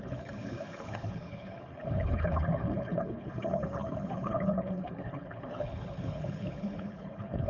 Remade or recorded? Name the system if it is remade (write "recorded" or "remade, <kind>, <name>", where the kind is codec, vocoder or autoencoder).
remade, codec, HILCodec